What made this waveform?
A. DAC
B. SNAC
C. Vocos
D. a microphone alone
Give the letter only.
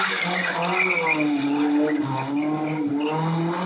D